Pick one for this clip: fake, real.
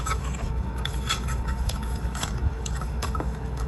fake